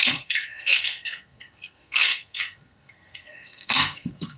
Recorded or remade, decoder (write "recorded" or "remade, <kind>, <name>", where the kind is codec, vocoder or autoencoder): remade, codec, SNAC